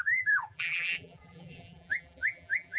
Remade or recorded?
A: remade